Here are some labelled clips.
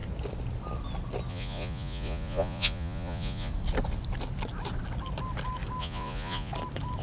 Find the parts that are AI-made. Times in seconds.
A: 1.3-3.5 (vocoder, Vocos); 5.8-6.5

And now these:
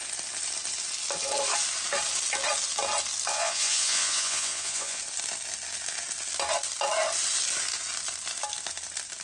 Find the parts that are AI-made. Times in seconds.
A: 3.3-5.0 (vocoder, Vocos)

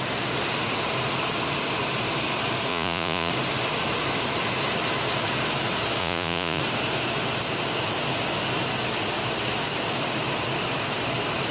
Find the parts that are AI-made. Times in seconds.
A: 2.7-3.3 (vocoder, Vocos); 6.0-6.6

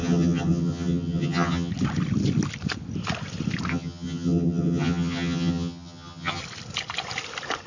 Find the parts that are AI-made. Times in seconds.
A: 0.0-1.7 (vocoder, HiFi-GAN); 3.7-6.4

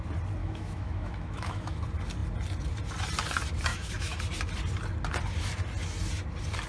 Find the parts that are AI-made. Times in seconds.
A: 0.4-1.8 (autoencoder, DAC-VAE); 3.7-4.2